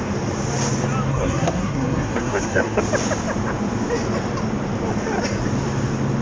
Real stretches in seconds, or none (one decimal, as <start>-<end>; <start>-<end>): 0.0-1.1; 2.8-6.2